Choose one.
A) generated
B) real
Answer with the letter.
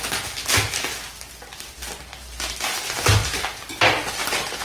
B